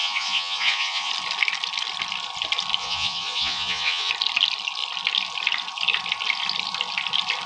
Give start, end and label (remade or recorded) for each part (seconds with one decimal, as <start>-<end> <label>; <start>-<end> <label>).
0.0-1.1 remade; 1.1-2.8 recorded; 2.8-4.1 remade; 4.1-7.5 recorded